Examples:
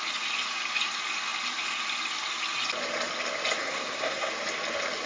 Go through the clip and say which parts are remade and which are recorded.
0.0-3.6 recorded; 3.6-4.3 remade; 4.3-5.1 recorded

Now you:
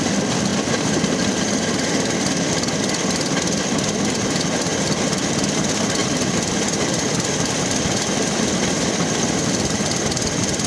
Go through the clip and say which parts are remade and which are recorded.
0.0-6.0 recorded; 6.0-10.0 remade; 10.0-10.7 recorded

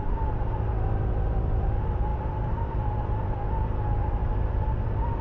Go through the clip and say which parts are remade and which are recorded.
0.0-5.2 remade

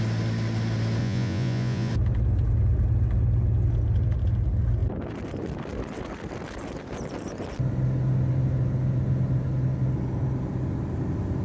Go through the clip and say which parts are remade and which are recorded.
0.0-1.0 recorded; 1.0-1.9 remade; 1.9-11.4 recorded

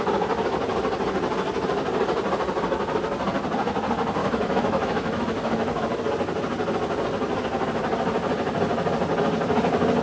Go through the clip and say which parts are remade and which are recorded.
0.0-4.2 recorded; 4.2-6.0 remade; 6.0-10.0 recorded

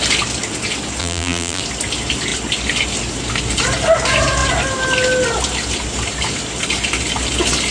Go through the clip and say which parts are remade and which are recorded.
0.0-1.0 recorded; 1.0-1.6 remade; 1.6-7.7 recorded

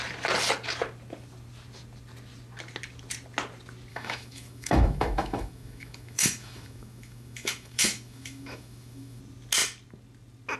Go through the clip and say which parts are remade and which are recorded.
0.0-3.9 recorded; 3.9-9.2 remade; 9.2-10.6 recorded